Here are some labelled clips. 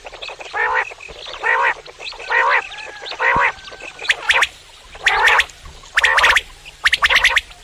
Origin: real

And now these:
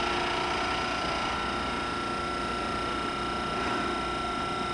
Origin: real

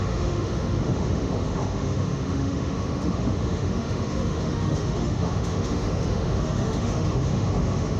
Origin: fake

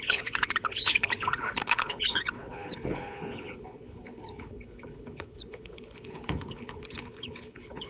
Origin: fake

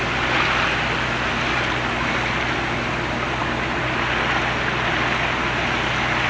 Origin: real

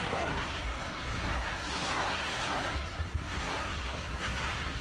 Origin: fake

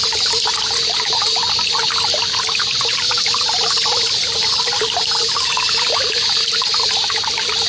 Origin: real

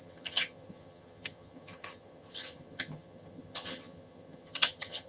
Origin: fake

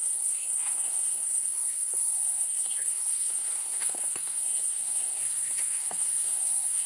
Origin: fake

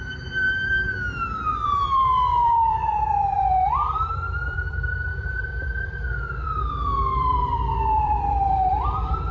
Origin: fake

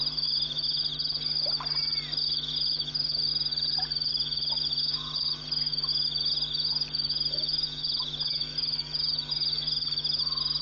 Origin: real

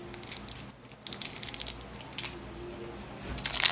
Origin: real